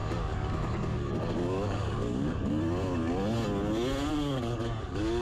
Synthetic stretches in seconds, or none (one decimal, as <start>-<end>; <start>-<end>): 0.0-2.5; 4.1-5.2